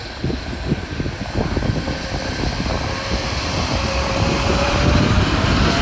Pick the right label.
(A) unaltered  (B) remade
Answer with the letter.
A